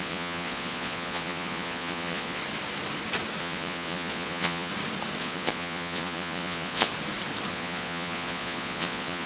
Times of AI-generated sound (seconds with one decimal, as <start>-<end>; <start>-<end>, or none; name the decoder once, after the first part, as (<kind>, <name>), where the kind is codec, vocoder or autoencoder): 0.0-2.4 (vocoder, Vocos); 3.4-4.7; 5.2-6.9; 7.5-9.3